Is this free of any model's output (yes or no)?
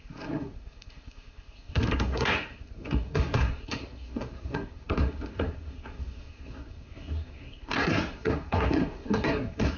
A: no